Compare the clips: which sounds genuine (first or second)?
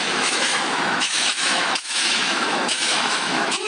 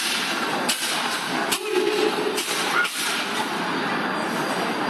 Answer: second